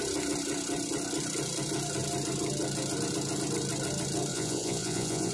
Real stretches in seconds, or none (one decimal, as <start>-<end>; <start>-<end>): 0.0-4.3